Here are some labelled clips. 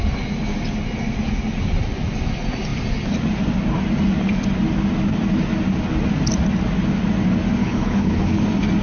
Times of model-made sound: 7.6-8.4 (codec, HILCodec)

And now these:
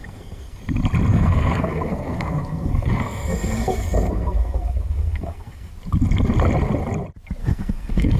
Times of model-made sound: 0.0-0.6 (codec, SNAC); 1.1-5.7; 7.4-8.2

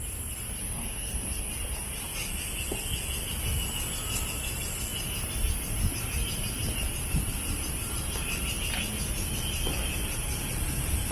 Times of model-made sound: 0.6-1.5 (codec, SNAC)

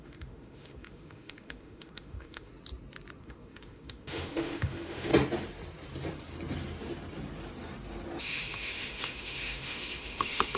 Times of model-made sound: 0.0-2.5 (autoencoder, DAC-VAE); 3.2-5.1; 8.2-10.6